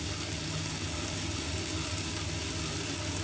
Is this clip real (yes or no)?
yes